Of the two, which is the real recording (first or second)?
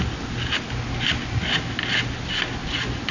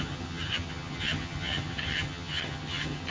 first